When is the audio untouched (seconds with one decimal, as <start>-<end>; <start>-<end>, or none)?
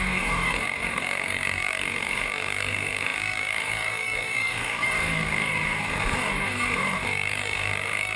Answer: none